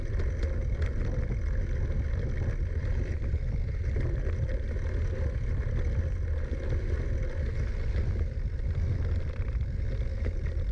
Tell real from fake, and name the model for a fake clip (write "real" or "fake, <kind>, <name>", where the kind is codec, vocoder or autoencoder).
real